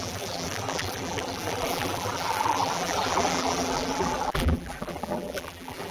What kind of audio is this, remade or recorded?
remade